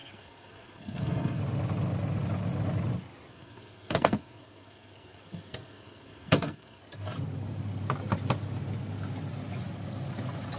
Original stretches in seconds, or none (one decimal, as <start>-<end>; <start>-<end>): 1.4-3.3; 6.8-10.6